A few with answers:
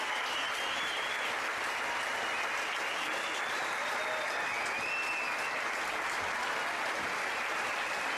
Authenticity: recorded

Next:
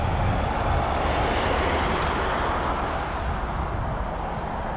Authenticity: recorded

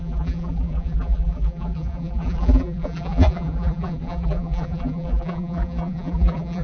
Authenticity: remade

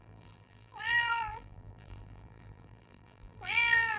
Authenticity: remade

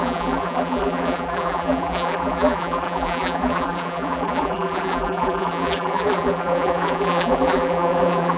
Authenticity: remade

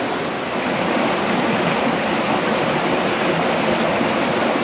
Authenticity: recorded